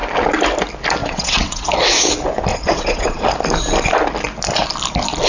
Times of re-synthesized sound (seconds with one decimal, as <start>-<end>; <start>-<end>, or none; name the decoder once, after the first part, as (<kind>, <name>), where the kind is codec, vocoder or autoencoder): 1.0-1.7 (vocoder, WaveNeXt); 2.5-3.2